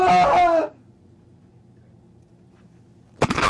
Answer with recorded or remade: recorded